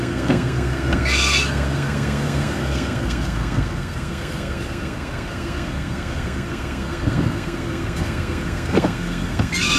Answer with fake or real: fake